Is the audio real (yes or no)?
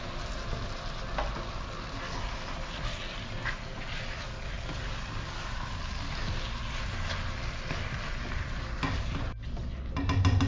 yes